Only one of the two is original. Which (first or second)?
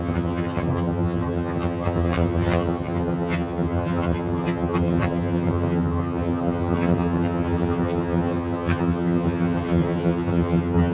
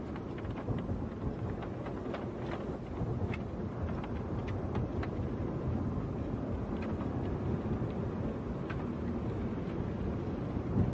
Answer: second